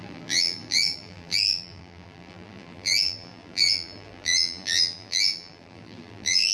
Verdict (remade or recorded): remade